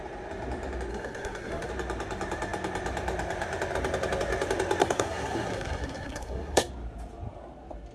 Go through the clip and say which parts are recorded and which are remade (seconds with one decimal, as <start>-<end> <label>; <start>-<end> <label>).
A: 0.0-0.9 recorded; 0.9-1.7 remade; 1.7-4.8 recorded; 4.8-6.7 remade; 6.7-7.9 recorded